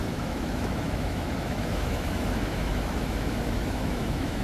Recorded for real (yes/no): no